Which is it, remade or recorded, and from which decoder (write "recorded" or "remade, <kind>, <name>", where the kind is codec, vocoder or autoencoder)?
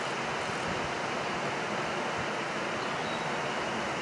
recorded